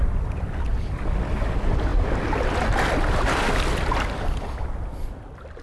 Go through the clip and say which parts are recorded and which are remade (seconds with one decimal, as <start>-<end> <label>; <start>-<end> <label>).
0.0-5.6 recorded